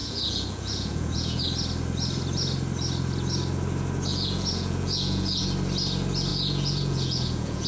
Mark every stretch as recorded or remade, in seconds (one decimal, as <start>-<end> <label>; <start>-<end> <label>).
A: 0.0-1.4 remade; 1.4-4.1 recorded; 4.1-5.4 remade; 5.4-6.3 recorded; 6.3-7.7 remade